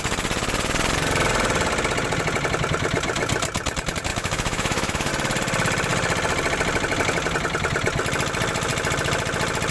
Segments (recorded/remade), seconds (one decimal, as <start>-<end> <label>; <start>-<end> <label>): 0.0-4.1 recorded; 4.1-5.1 remade; 5.1-9.7 recorded